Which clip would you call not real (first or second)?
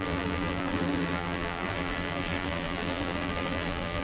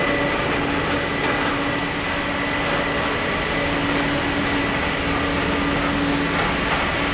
first